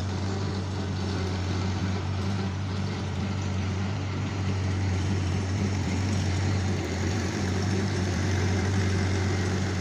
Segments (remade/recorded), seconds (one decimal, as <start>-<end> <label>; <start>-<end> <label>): 0.0-1.8 recorded; 1.8-3.2 remade; 3.2-3.6 recorded; 3.6-8.8 remade; 8.8-9.8 recorded